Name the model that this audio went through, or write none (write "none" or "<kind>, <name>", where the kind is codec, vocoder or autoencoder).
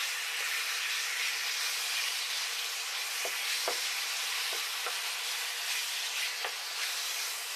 vocoder, BigVGAN v2